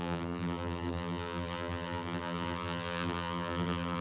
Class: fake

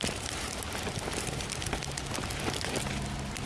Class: real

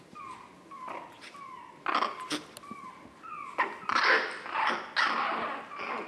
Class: real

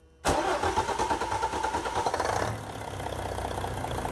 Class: real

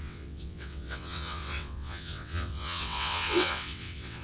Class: fake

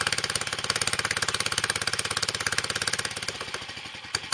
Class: real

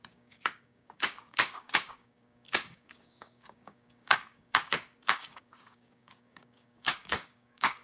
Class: fake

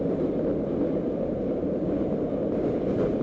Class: real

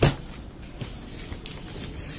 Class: real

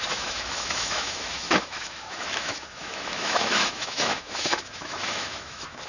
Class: fake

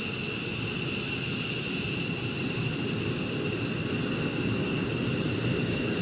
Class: real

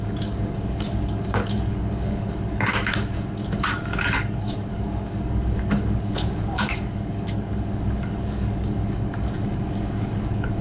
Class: fake